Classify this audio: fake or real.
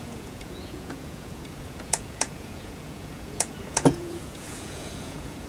fake